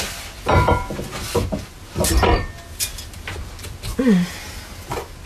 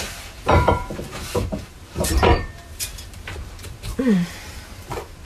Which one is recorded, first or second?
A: first